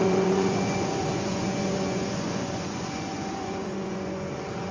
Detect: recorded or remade remade